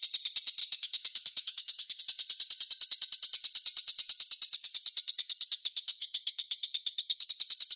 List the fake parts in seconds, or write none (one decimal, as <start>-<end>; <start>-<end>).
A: 0.6-2.0; 5.6-7.3